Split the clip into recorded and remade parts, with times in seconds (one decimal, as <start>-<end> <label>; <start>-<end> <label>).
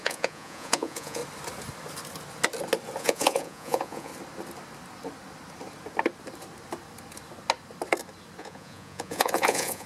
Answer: 0.0-1.2 remade; 1.2-3.0 recorded; 3.0-4.1 remade; 4.1-8.4 recorded; 8.4-9.9 remade